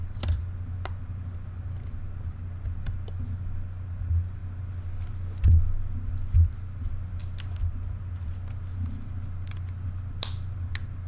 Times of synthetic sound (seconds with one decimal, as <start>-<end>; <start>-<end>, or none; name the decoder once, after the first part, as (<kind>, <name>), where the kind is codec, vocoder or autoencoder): none